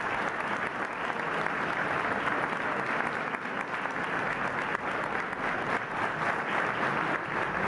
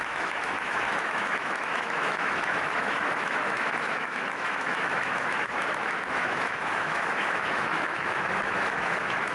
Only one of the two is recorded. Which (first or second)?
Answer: first